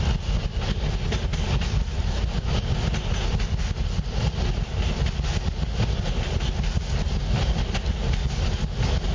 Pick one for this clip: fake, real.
real